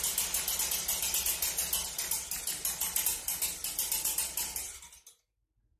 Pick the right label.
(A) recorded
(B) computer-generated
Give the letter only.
A